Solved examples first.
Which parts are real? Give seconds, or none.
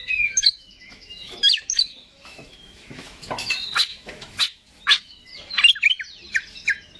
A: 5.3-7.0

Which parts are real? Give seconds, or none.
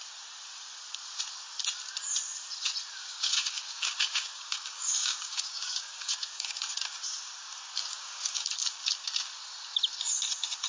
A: 0.0-3.0; 6.6-7.8; 8.5-10.7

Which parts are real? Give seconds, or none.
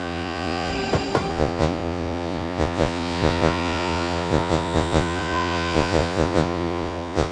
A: 0.7-1.3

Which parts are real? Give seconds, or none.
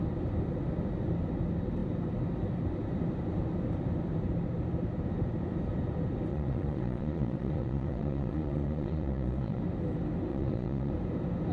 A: 0.0-6.3; 9.6-10.3; 10.9-11.5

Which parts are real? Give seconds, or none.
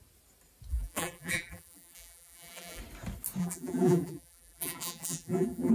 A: 0.0-0.7; 2.8-3.4